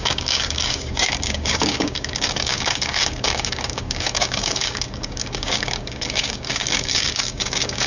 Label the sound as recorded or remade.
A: remade